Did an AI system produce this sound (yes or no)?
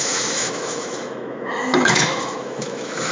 yes